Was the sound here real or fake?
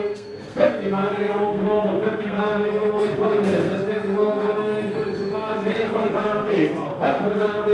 fake